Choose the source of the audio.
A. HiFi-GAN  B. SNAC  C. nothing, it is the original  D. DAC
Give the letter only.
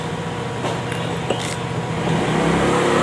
C